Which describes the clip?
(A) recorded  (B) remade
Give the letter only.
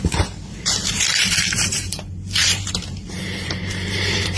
B